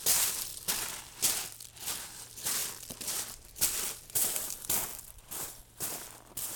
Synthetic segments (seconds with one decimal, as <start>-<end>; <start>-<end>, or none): 0.0-6.6

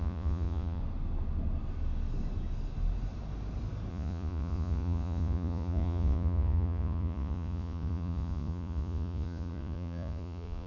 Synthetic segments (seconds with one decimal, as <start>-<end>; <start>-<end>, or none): 0.0-0.8; 3.9-10.7

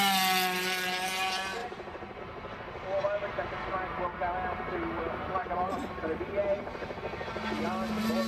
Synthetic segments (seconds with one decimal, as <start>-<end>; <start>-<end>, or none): 1.6-2.2; 5.4-5.9